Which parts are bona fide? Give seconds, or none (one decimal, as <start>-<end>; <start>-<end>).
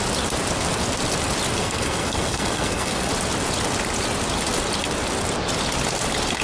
0.0-1.6; 3.1-6.4